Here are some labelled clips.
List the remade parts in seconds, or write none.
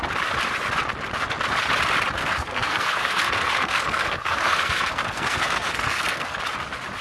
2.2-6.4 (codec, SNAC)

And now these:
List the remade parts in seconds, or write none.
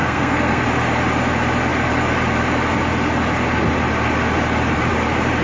0.0-0.6 (codec, SNAC)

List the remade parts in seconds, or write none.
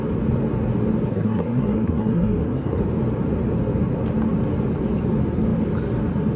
1.1-2.8 (codec, SNAC)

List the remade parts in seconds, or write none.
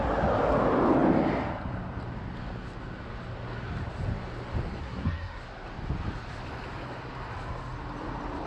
4.8-5.4 (codec, SNAC)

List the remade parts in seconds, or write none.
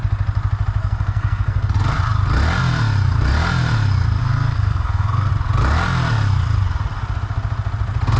0.8-1.7 (codec, SNAC); 4.2-5.3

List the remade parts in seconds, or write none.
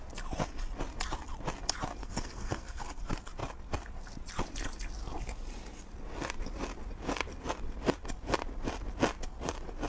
2.0-3.0 (codec, SNAC)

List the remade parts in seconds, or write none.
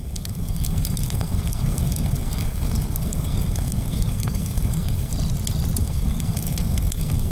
0.0-5.1 (codec, SNAC); 5.8-7.3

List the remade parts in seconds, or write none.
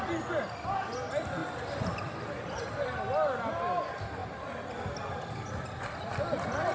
none